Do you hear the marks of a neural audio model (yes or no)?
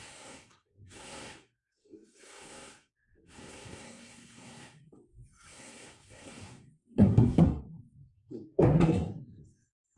yes